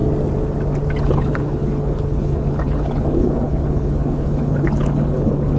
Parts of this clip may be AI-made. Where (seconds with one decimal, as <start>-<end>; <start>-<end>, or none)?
1.0-5.6